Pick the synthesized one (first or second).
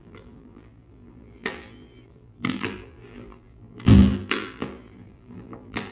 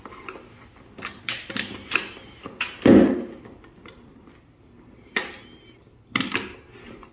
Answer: first